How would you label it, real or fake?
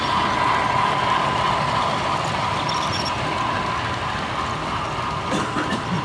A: real